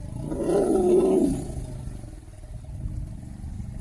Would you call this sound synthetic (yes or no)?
no